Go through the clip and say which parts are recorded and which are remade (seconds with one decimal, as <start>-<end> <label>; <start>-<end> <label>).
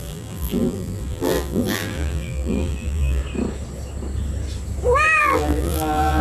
0.0-3.2 remade; 3.2-5.2 recorded; 5.2-6.2 remade